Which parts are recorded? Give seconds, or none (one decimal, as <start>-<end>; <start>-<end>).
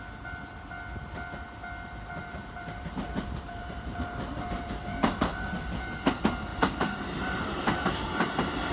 0.0-2.2; 5.5-6.5